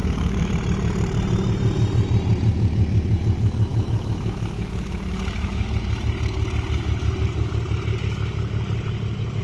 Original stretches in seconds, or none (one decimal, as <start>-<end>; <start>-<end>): 0.5-3.7; 5.7-9.4